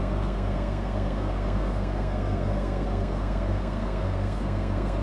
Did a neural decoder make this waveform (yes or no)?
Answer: yes